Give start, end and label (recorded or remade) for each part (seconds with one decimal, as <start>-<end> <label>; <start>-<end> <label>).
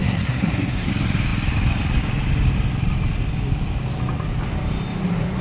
0.0-0.9 remade; 0.9-5.4 recorded